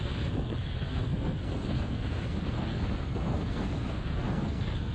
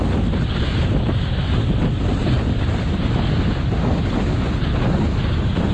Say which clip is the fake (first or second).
first